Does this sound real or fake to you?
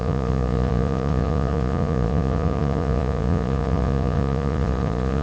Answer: fake